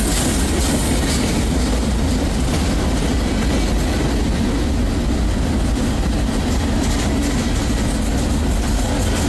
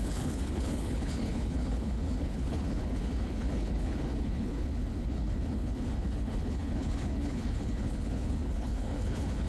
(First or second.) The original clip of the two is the first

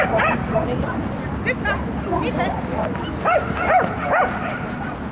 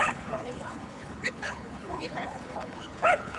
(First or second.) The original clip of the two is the first